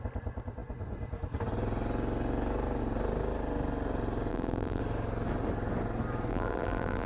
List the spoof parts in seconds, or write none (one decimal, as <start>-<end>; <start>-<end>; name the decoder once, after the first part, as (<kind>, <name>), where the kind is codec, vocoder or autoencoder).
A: 4.3-4.8 (vocoder, BigVGAN v2); 6.3-7.1